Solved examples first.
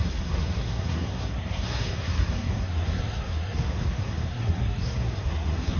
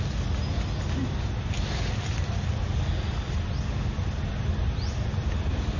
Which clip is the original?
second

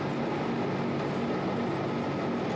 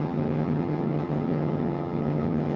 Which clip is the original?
first